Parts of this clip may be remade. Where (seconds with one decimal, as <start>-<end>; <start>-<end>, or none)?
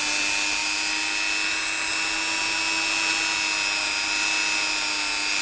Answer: none